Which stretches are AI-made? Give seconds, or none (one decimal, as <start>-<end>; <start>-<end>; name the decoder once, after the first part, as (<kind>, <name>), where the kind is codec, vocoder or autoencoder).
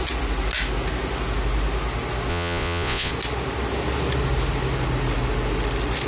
2.3-3.1 (vocoder, Vocos)